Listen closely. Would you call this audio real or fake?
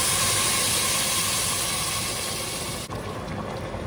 real